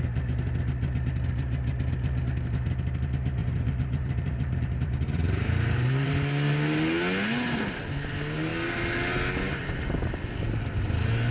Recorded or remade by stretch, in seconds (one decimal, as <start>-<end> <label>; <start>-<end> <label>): 0.0-3.4 recorded; 3.4-6.1 remade; 6.1-11.3 recorded